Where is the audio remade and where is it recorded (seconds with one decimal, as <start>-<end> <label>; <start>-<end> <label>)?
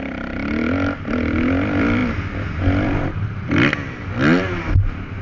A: 0.0-5.2 recorded